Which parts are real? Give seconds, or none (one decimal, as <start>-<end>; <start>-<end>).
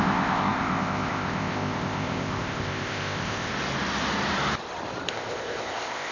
3.5-5.1